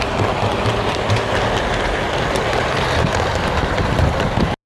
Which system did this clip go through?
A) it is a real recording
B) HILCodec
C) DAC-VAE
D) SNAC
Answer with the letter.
A